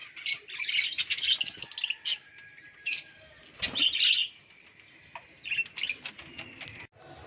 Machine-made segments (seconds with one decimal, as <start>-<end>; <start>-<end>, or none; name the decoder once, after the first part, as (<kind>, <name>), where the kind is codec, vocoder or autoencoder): none